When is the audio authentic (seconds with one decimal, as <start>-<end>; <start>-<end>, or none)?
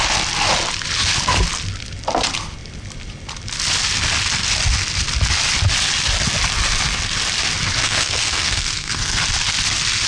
0.0-7.8; 9.2-10.1